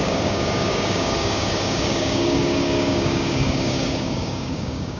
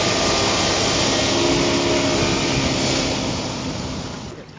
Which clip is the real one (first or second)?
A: second